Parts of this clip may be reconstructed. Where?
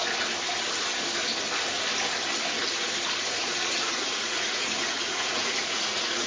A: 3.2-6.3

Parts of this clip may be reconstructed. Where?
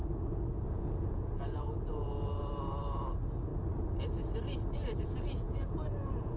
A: 0.0-3.5; 5.0-6.4